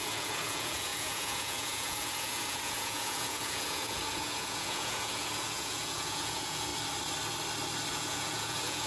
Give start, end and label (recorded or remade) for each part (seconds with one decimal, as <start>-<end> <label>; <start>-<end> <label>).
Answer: 0.0-6.7 remade; 6.7-7.9 recorded; 7.9-8.9 remade

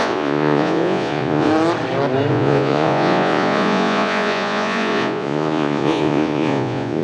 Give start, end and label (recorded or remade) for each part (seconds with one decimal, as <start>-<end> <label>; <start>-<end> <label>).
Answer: 0.0-1.5 remade; 1.5-2.3 recorded; 2.3-7.0 remade

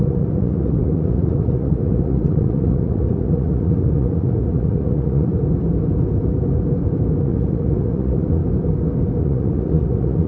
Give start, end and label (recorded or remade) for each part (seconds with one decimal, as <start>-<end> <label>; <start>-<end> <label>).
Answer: 0.0-5.3 remade; 5.3-7.2 recorded; 7.2-8.4 remade; 8.4-9.2 recorded; 9.2-10.3 remade

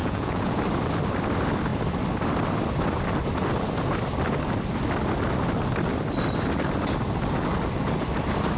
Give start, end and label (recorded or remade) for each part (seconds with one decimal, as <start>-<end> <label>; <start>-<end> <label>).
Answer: 0.0-0.6 remade; 0.6-8.6 recorded